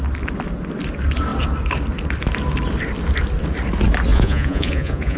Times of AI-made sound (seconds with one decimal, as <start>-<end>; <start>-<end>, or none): 4.1-5.2